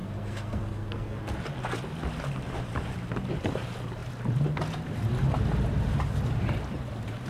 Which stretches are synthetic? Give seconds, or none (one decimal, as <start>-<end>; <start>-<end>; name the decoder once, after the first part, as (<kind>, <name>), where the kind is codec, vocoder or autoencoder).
0.0-1.2 (codec, SNAC)